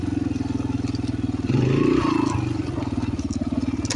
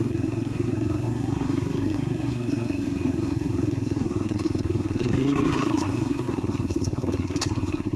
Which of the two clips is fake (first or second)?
second